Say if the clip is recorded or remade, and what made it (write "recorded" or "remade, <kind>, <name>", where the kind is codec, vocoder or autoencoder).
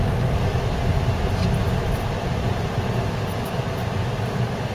recorded